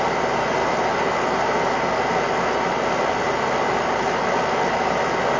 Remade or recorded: recorded